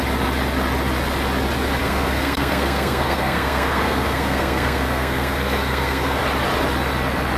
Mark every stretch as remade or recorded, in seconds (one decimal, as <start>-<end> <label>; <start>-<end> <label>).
0.0-1.8 recorded; 1.8-6.2 remade; 6.2-7.4 recorded